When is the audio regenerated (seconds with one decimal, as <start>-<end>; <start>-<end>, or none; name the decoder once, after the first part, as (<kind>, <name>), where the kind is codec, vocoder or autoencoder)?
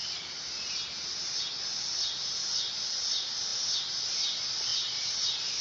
4.7-5.6 (vocoder, BigVGAN v2)